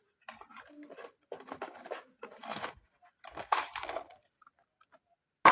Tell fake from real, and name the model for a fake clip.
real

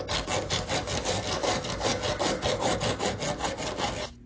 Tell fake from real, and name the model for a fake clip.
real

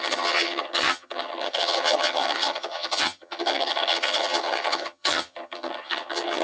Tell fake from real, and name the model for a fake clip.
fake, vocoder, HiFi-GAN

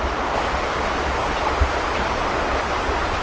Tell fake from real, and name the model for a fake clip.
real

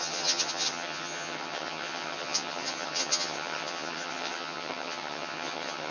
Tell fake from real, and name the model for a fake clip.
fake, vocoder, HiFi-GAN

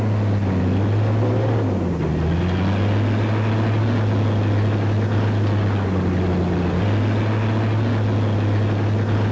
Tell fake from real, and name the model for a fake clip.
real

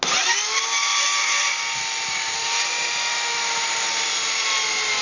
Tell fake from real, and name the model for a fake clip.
real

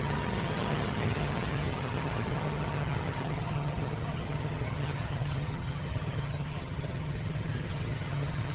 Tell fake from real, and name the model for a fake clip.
fake, vocoder, HiFi-GAN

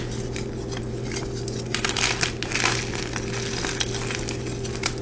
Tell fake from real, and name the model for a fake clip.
real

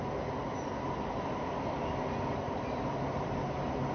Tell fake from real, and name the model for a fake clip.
real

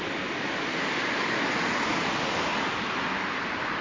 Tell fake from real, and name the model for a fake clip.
real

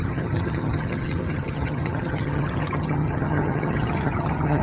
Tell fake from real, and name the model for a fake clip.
fake, vocoder, HiFi-GAN